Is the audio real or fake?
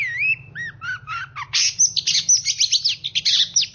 real